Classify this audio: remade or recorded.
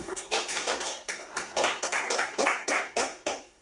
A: remade